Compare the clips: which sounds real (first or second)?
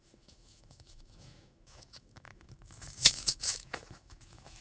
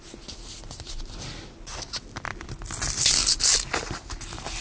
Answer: second